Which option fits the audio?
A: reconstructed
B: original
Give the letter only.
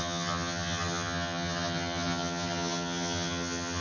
A